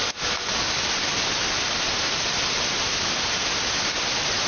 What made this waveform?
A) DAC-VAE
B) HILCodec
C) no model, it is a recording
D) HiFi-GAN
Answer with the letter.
C